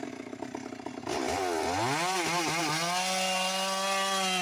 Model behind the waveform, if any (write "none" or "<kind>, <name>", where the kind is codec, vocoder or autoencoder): none